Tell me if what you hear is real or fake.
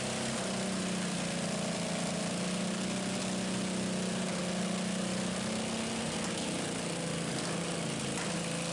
real